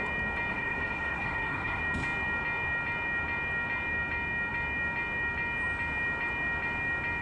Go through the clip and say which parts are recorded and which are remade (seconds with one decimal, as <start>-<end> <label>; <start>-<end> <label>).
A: 0.0-0.5 recorded; 0.5-1.8 remade; 1.8-7.2 recorded